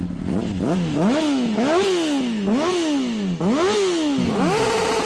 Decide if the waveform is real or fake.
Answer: real